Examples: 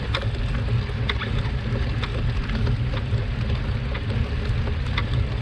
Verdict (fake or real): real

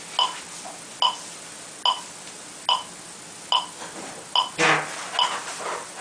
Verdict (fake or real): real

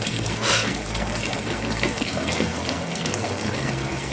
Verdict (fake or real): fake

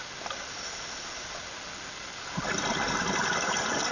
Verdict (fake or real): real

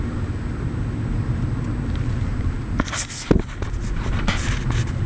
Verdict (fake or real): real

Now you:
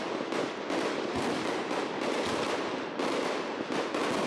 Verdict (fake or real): real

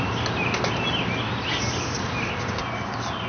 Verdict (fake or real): real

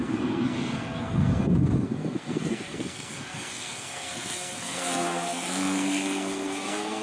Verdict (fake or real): fake